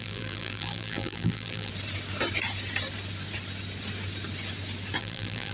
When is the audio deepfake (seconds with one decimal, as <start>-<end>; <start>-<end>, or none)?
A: 0.0-1.7; 5.0-5.5